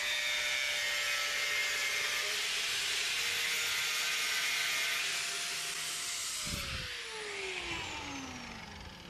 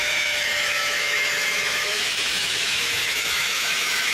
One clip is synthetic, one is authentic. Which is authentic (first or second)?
first